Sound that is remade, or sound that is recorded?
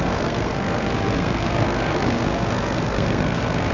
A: remade